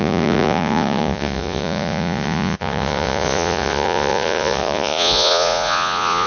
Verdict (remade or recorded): remade